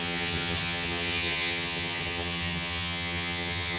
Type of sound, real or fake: fake